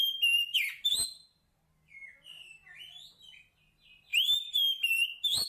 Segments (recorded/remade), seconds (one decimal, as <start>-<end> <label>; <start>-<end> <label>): 0.0-5.5 recorded